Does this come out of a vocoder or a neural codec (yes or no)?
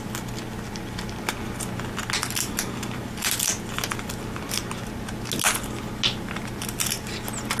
no